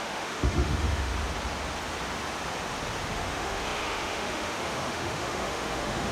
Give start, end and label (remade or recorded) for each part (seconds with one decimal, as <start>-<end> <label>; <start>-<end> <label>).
0.0-1.1 remade; 1.1-3.1 recorded; 3.1-6.1 remade